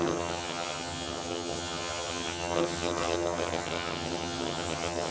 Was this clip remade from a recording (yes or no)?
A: yes